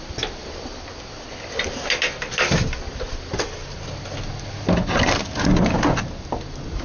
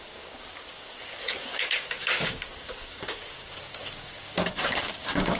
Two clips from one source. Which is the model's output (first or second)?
second